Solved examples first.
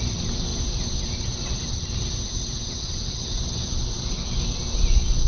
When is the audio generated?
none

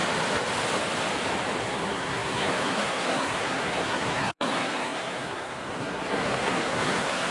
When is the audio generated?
1.6-7.3 (codec, SNAC)

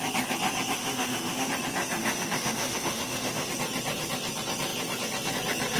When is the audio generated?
0.8-1.5 (autoencoder, DAC-VAE); 2.0-3.5